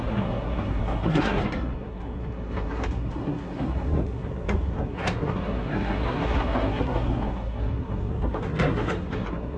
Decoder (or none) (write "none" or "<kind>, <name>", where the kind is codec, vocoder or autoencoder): codec, SNAC